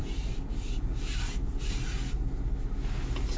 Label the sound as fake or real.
real